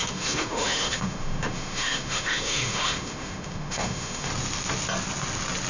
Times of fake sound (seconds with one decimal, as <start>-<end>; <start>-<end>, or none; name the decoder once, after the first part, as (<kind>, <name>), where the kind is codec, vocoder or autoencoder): 0.0-4.3 (autoencoder, DAC-VAE)